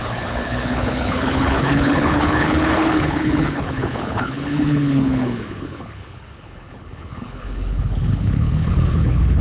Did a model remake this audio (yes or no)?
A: yes